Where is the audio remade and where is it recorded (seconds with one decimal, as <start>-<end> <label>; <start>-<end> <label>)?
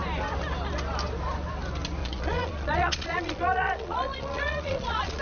0.0-2.0 recorded; 2.0-5.2 remade